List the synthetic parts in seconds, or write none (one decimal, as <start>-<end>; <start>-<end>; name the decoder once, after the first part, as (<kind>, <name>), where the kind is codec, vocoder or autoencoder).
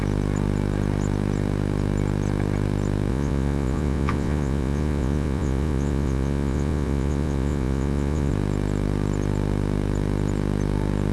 3.1-8.3 (vocoder, Vocos)